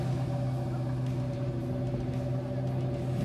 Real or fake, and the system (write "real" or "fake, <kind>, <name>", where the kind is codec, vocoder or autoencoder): real